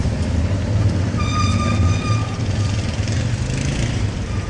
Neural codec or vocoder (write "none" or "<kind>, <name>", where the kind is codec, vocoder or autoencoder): none